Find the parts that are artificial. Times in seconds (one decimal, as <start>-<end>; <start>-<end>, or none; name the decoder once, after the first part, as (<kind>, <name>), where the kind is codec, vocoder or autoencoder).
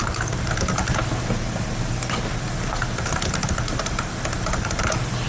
none